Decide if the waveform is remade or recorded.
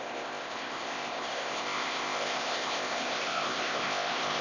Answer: remade